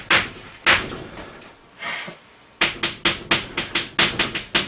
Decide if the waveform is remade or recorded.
recorded